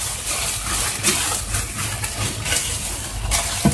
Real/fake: real